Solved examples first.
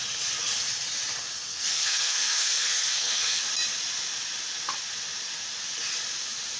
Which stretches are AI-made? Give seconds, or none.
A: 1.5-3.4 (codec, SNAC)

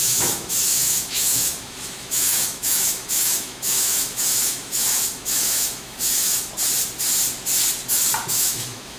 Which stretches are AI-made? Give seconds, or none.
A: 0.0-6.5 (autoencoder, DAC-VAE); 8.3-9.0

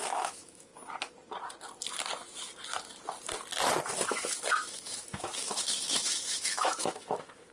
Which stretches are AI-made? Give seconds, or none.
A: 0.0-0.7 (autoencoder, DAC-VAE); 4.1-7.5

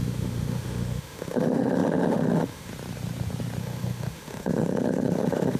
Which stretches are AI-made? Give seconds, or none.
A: 0.0-2.7 (autoencoder, DAC-VAE); 3.6-5.6